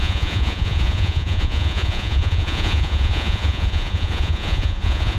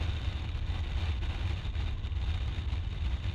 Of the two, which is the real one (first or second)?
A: second